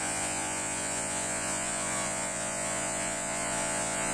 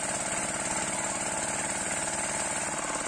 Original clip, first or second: second